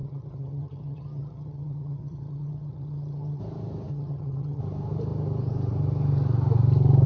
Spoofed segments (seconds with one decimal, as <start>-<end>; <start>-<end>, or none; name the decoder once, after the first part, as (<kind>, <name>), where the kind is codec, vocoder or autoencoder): 0.0-3.4 (vocoder, HiFi-GAN); 3.9-4.6